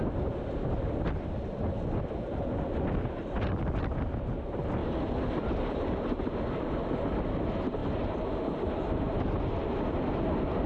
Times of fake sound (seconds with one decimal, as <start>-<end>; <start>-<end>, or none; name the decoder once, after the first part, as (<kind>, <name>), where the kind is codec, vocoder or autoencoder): none